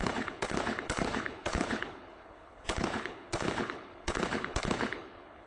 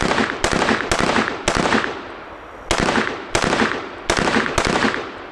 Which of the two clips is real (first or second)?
second